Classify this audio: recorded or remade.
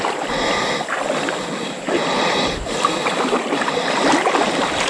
recorded